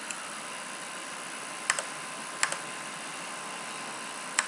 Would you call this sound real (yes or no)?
no